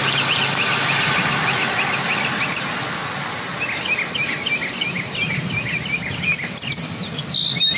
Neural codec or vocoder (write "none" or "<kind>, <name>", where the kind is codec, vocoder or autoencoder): none